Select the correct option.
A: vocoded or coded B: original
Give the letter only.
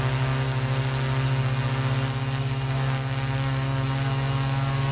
B